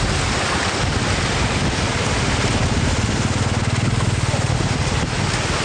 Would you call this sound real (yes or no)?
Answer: yes